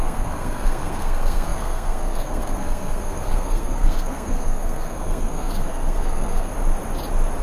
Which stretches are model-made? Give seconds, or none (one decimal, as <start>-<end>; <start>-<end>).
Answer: 0.0-6.5